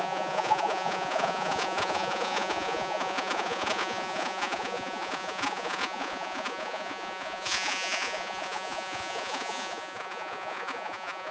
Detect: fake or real fake